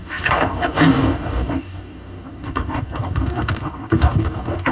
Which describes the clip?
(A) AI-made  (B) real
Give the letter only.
A